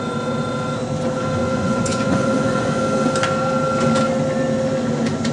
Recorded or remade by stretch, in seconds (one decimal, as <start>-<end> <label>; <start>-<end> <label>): 0.0-1.4 recorded; 1.4-2.8 remade; 2.8-5.3 recorded